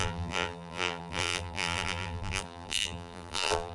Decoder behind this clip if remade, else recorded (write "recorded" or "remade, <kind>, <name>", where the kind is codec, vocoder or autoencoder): remade, vocoder, BigVGAN v2